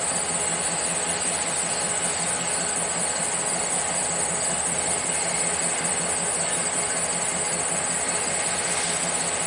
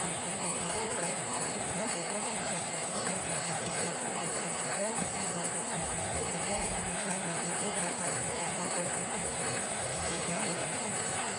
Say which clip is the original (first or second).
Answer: first